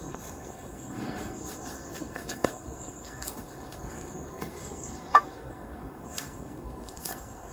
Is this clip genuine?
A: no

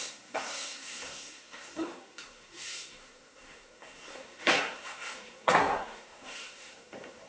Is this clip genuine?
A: no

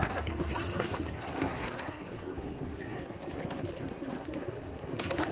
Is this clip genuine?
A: no